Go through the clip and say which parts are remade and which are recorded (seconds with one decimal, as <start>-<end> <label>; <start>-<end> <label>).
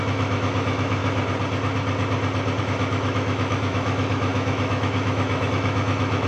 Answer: 0.0-1.0 remade; 1.0-2.6 recorded; 2.6-6.3 remade